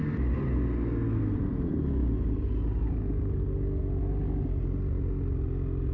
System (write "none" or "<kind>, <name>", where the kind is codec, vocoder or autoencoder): none